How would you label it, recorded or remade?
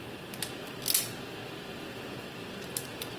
recorded